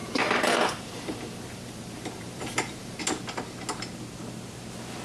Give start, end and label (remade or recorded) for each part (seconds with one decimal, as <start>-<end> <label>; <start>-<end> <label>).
0.0-3.0 remade; 3.0-5.0 recorded